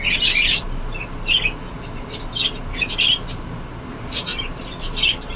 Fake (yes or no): no